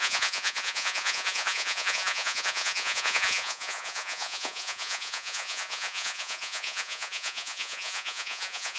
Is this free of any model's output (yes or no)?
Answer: no